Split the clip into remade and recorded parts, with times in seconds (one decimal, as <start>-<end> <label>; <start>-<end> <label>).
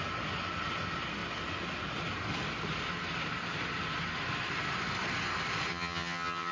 0.0-5.7 recorded; 5.7-6.5 remade